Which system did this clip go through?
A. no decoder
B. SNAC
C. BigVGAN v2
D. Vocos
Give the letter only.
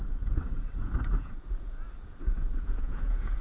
D